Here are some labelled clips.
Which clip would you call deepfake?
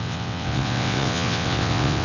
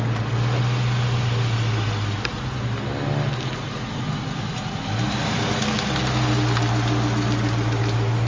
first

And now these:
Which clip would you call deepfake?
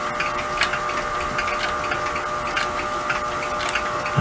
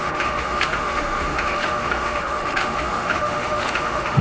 second